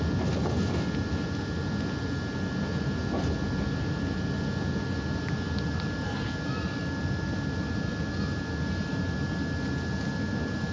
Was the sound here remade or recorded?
recorded